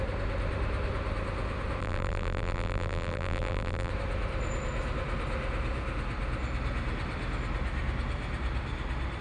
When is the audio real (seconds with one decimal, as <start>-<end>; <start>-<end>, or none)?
0.0-1.8; 3.9-9.2